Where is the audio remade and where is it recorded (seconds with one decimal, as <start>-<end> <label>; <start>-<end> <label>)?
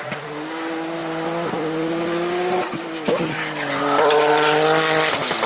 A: 0.0-5.5 recorded